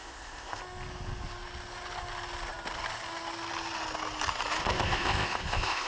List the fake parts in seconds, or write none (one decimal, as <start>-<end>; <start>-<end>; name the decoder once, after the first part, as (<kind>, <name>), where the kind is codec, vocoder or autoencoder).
0.0-0.6 (codec, ZipCodec); 4.6-5.9